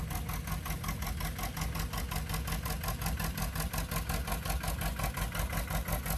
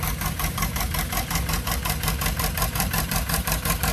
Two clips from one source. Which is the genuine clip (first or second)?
first